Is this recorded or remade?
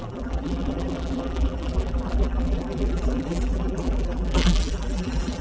remade